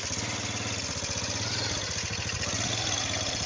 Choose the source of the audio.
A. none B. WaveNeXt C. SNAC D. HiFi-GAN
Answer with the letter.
A